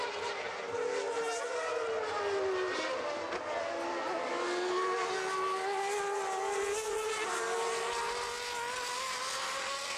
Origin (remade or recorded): recorded